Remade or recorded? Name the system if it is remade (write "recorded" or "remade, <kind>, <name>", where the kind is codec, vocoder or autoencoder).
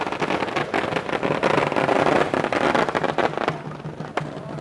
remade, vocoder, BigVGAN v2